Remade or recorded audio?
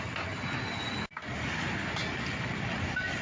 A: recorded